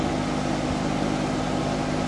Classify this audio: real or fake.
real